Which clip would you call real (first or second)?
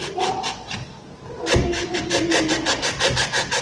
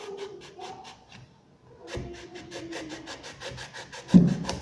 second